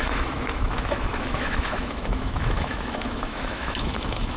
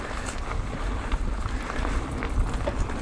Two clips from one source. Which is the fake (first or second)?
first